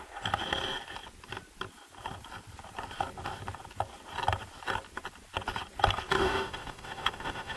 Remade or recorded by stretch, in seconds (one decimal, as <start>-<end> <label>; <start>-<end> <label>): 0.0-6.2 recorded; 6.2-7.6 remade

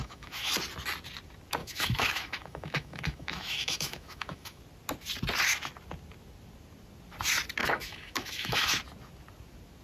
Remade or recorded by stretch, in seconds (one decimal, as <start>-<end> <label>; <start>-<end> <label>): 0.0-0.5 remade; 0.5-1.6 recorded; 1.6-4.6 remade; 4.6-7.6 recorded; 7.6-8.8 remade; 8.8-9.8 recorded

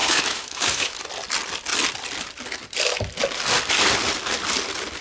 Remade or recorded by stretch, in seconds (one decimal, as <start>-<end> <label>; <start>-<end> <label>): 0.0-1.0 remade; 1.0-5.0 recorded

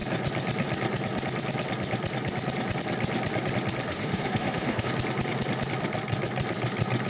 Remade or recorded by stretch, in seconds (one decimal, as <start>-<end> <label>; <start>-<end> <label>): 0.0-3.9 recorded; 3.9-4.9 remade; 4.9-7.1 recorded